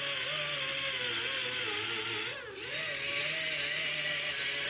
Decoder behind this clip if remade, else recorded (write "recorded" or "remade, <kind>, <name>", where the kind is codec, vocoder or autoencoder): recorded